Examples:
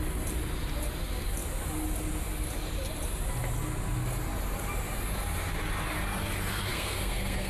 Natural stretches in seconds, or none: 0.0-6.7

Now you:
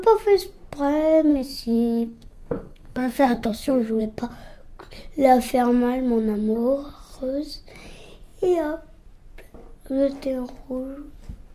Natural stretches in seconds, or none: 0.0-1.3; 4.0-11.5

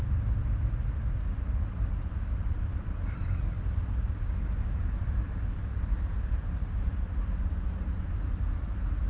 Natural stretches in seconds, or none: 0.0-9.1

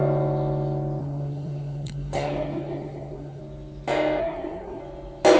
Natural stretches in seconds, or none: 0.0-1.0; 3.4-4.2; 4.8-5.4

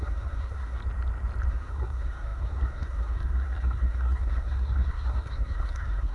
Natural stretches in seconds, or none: 0.8-1.5

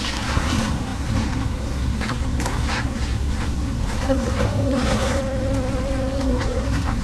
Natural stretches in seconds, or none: 5.2-6.2

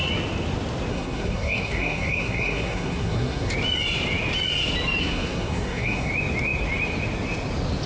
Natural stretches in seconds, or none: 0.0-0.9; 3.5-5.0; 6.1-7.9